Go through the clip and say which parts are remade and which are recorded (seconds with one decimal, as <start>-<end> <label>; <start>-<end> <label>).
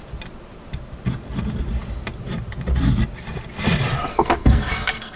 0.0-4.1 recorded; 4.1-5.2 remade